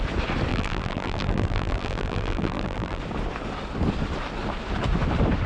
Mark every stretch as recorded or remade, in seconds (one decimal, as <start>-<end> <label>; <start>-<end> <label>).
0.0-0.5 recorded; 0.5-3.0 remade; 3.0-5.5 recorded